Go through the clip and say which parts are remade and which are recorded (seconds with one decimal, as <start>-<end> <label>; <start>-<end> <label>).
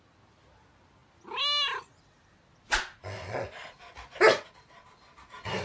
0.0-5.6 recorded